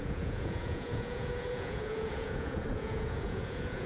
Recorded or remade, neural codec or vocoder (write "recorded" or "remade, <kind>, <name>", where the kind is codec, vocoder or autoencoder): remade, vocoder, Vocos